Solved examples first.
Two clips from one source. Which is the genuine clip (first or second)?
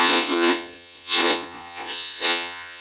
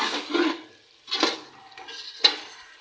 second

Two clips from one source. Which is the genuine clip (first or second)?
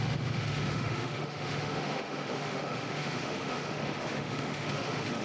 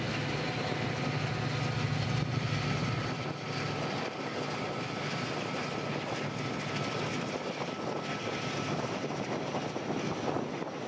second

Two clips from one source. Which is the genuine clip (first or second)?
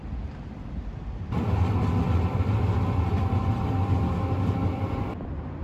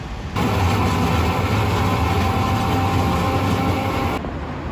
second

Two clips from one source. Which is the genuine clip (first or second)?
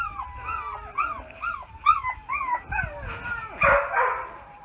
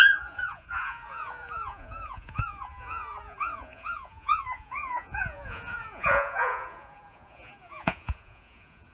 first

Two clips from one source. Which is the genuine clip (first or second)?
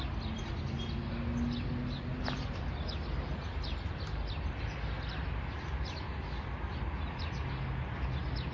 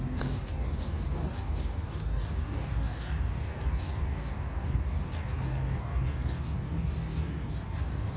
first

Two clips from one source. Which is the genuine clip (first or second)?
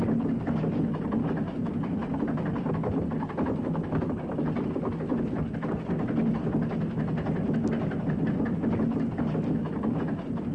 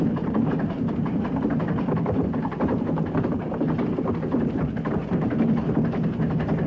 first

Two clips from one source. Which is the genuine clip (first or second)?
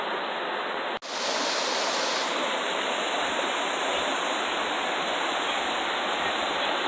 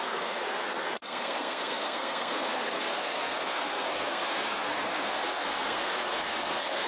first